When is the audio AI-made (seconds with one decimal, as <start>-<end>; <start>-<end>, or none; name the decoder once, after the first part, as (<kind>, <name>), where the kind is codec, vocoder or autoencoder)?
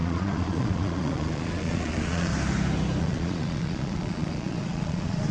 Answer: 0.0-2.3 (vocoder, Vocos); 3.0-5.3